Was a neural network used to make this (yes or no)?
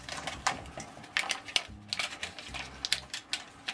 no